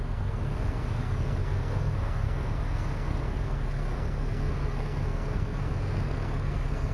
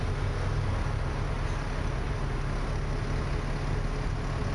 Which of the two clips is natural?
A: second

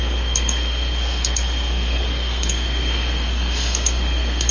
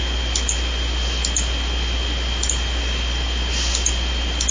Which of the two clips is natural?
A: second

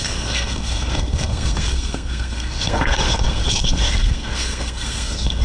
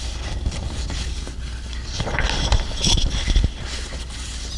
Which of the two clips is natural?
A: second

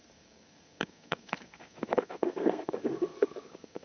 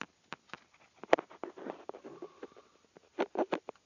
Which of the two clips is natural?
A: second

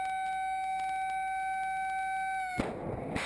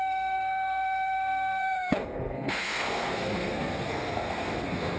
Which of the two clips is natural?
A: first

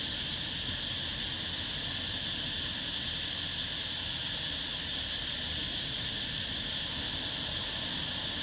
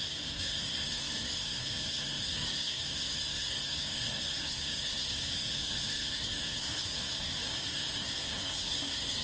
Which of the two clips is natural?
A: first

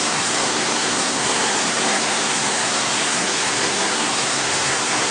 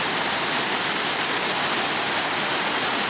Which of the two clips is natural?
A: second